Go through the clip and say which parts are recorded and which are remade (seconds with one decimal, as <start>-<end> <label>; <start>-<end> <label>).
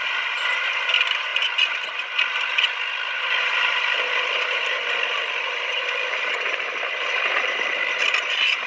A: 0.0-1.3 remade; 1.3-3.2 recorded; 3.2-8.7 remade